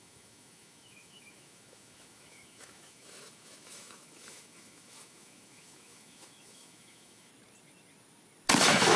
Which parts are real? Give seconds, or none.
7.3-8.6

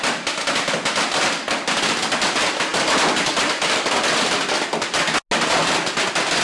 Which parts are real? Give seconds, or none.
0.0-6.4